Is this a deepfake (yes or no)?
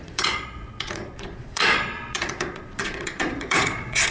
yes